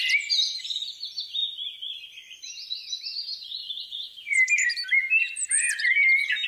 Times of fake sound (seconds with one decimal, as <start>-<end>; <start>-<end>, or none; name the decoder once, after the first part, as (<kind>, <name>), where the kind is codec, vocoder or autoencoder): 1.4-2.0 (vocoder, BigVGAN v2); 3.6-5.9